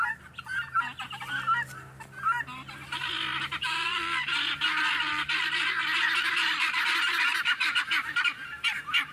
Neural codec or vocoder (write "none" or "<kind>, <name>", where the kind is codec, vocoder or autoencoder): none